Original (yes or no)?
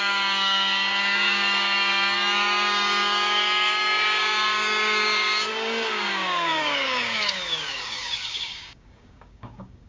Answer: no